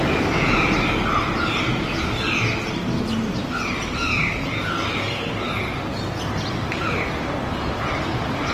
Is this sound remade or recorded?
recorded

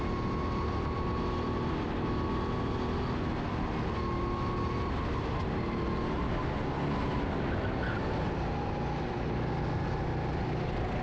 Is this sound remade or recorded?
recorded